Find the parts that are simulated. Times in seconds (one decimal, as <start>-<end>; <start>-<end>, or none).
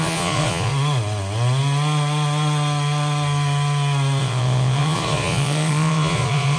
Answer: 0.0-0.7; 4.2-6.6